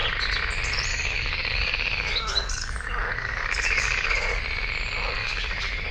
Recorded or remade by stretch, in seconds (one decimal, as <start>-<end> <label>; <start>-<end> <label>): 0.0-0.9 recorded; 0.9-4.4 remade; 4.4-5.2 recorded; 5.2-5.9 remade